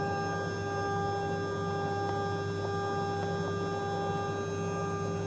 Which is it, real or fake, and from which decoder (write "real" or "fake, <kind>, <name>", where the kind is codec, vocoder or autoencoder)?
real